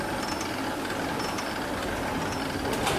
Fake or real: real